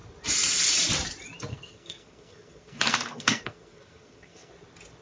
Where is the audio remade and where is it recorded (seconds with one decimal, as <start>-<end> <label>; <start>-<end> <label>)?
0.0-1.5 recorded; 1.5-4.5 remade; 4.5-5.0 recorded